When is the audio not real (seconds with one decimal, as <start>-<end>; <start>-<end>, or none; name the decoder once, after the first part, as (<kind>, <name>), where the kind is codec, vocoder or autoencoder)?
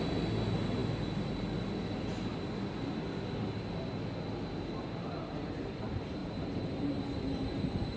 0.8-1.3 (vocoder, BigVGAN v2); 6.2-7.0